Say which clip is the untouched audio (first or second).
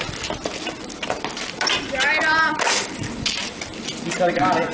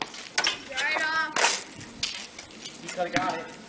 second